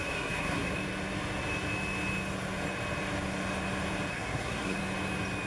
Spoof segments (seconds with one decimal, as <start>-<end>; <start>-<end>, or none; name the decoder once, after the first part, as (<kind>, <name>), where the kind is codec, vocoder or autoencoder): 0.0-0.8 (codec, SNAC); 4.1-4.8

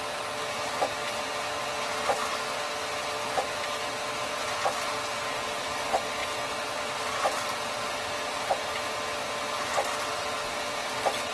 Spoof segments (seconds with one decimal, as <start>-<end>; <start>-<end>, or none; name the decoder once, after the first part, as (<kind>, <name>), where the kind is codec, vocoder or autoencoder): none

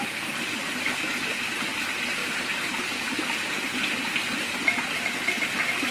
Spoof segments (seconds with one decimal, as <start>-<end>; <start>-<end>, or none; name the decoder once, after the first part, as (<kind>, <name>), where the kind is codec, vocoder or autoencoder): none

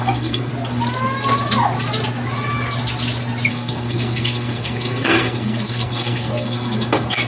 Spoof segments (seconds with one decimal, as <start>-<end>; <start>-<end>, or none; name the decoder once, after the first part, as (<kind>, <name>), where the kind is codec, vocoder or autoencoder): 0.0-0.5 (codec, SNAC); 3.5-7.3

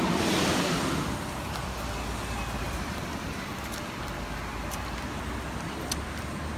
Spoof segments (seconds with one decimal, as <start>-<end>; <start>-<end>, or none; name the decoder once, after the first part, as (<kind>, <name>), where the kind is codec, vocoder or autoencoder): none

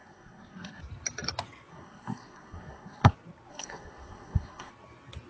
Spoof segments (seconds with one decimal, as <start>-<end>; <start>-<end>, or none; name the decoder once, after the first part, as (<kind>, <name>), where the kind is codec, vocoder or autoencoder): 0.0-0.8 (codec, SNAC); 1.7-3.1; 3.5-4.7